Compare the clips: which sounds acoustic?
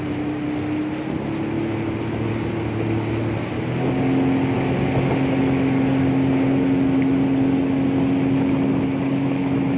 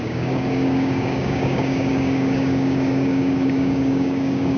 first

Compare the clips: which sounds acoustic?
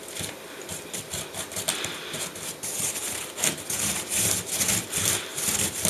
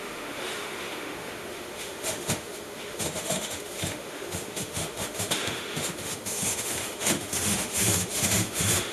first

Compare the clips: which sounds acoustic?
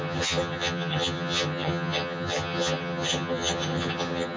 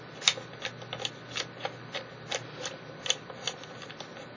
second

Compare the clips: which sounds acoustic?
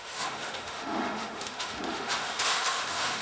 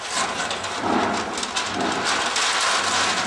second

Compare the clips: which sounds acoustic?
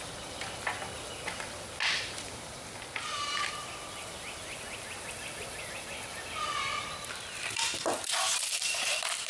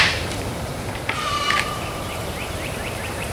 first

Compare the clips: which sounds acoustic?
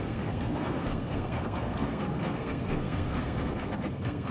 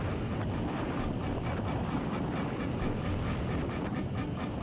second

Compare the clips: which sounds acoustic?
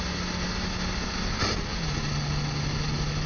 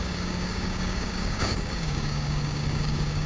first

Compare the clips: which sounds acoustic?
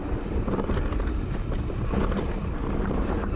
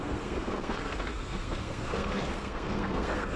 first